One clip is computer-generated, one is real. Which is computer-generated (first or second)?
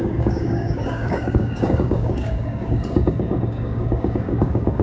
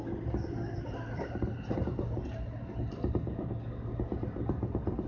first